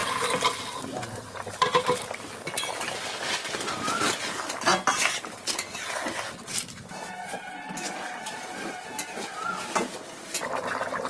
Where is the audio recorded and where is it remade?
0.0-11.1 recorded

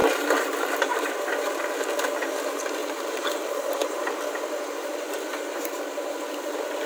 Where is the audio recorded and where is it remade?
0.0-1.2 remade; 1.2-2.8 recorded; 2.8-3.4 remade; 3.4-6.9 recorded